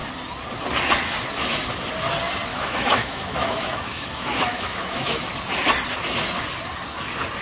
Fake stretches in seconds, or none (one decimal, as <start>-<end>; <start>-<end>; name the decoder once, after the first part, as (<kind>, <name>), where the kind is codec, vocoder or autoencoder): 2.5-5.2 (autoencoder, DAC-VAE)